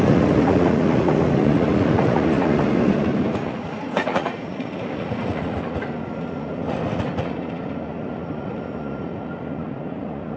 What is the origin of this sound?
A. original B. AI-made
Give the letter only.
B